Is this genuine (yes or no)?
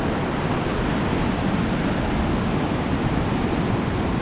yes